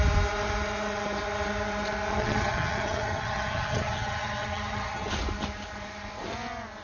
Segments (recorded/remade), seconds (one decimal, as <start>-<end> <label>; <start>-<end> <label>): 0.0-2.1 recorded; 2.1-5.1 remade; 5.1-6.8 recorded